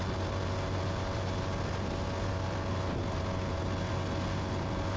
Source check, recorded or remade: recorded